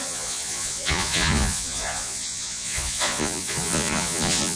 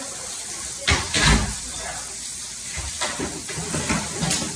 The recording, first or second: second